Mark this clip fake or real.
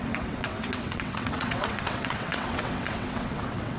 fake